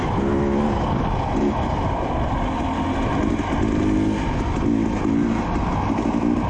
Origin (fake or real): real